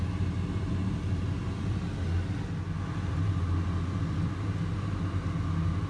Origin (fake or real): real